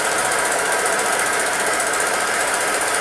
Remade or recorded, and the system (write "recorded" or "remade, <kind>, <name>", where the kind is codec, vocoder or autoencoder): remade, vocoder, BigVGAN v2